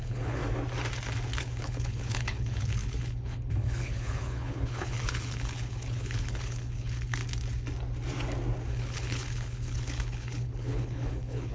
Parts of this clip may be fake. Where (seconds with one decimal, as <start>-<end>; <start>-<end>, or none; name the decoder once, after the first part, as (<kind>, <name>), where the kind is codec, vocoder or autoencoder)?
0.0-0.4 (codec, HILCodec); 1.4-7.2; 8.7-11.5